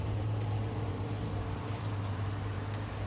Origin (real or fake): fake